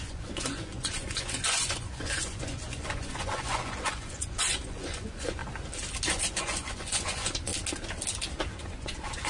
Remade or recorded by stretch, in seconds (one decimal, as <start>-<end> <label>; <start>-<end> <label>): 0.0-5.4 remade; 5.4-6.1 recorded; 6.1-7.5 remade; 7.5-8.6 recorded; 8.6-9.3 remade